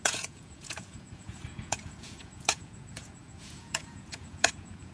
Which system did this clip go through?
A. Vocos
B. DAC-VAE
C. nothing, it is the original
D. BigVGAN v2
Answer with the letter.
A